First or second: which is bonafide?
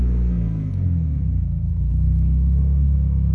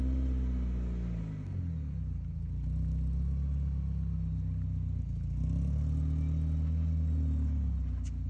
second